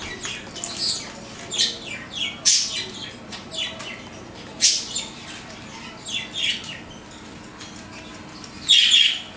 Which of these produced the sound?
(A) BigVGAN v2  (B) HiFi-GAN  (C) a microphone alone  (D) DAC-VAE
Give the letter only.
C